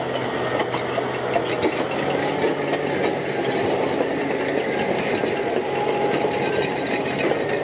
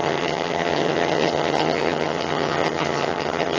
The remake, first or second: second